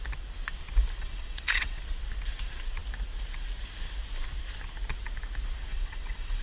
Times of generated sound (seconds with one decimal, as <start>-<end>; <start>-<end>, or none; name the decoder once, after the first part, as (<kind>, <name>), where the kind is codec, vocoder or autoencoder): 1.0-1.8 (vocoder, WaveNeXt); 5.7-6.4